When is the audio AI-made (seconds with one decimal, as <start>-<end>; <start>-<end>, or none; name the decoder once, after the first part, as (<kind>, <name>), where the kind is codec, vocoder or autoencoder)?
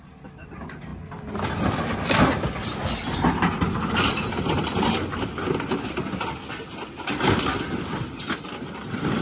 none